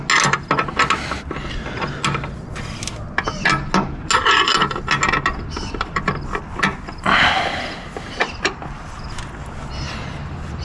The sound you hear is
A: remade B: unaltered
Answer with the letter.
B